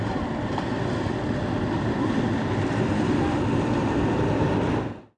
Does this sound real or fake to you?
real